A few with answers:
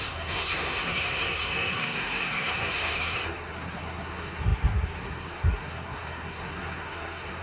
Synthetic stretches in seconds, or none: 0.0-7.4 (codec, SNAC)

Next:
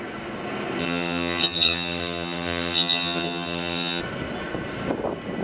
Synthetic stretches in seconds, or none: 0.8-4.0 (vocoder, HiFi-GAN)

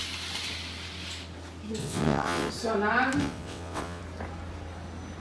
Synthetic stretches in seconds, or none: 1.8-2.5 (vocoder, WaveNeXt); 3.2-4.0

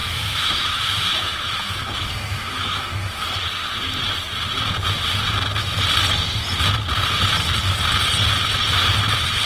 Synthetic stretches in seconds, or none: 0.0-3.2 (autoencoder, DAC-VAE)

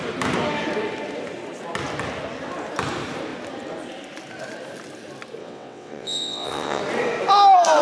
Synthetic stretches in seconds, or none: 5.4-6.8 (vocoder, WaveNeXt)

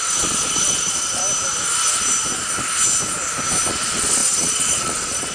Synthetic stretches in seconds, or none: 0.0-1.2 (vocoder, Vocos); 3.7-5.3